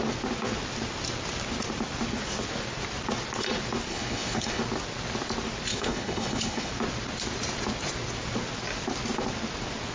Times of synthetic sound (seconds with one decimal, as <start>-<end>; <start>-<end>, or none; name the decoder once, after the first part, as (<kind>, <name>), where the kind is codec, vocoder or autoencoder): 3.9-4.6 (codec, HILCodec); 5.7-6.7